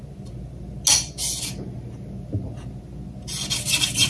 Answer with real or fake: real